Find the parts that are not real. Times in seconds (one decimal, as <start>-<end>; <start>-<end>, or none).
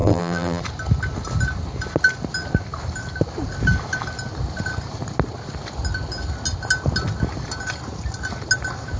0.0-0.6